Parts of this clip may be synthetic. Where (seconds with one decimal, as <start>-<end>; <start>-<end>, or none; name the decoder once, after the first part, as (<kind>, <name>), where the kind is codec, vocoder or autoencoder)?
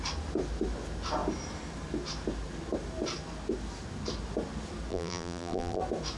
4.9-5.8 (vocoder, BigVGAN v2)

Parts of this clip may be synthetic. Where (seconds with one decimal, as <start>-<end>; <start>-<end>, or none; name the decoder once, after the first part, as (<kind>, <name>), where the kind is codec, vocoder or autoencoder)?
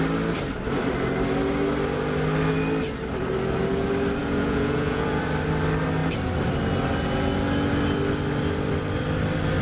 4.2-5.2 (vocoder, Vocos)